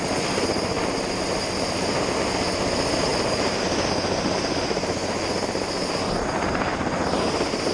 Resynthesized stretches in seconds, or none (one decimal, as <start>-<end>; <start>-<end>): none